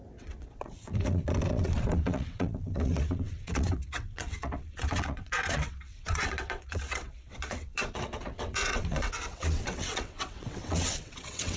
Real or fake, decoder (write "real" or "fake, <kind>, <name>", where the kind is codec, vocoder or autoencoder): fake, vocoder, WaveNeXt